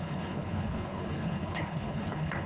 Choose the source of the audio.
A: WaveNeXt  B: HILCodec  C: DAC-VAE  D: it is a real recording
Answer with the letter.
B